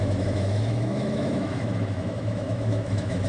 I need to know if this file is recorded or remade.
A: remade